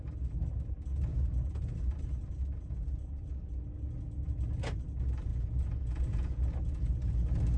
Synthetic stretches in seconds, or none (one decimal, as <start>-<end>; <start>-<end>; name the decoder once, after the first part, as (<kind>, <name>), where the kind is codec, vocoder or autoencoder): 1.1-1.7 (vocoder, Vocos); 5.3-6.9